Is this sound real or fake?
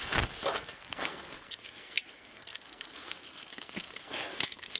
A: fake